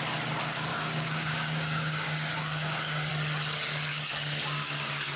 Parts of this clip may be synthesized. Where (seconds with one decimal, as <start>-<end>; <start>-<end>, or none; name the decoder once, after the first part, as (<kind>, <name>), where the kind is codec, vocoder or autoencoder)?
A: 0.7-3.1 (codec, DAC); 3.9-5.2